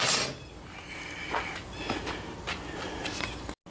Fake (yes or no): no